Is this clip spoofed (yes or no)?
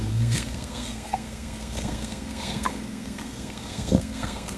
yes